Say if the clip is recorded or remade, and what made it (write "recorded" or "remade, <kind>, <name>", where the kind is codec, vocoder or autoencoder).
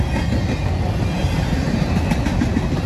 recorded